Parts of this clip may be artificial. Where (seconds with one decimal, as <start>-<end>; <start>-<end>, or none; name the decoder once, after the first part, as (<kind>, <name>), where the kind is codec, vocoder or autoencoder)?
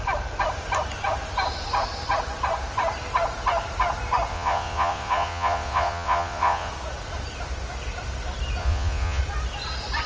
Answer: 4.3-6.7 (vocoder, Vocos); 8.6-9.2